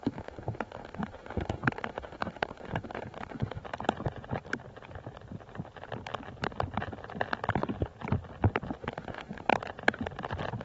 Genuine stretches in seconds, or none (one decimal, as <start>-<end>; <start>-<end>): 3.6-8.8; 9.5-10.6